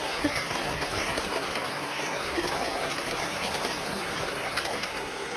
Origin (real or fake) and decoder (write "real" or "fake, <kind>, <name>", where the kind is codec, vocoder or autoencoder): fake, codec, SNAC